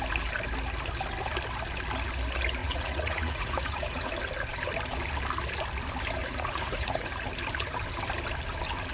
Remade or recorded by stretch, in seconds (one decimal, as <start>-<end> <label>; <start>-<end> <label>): 0.0-2.6 recorded; 2.6-4.1 remade; 4.1-6.2 recorded; 6.2-7.1 remade; 7.1-8.9 recorded